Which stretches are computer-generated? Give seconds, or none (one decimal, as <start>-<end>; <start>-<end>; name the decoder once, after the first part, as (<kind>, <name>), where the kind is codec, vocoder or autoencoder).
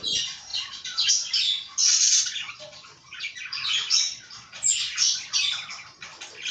0.5-1.1 (vocoder, Vocos); 1.8-5.7